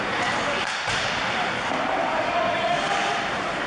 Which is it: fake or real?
fake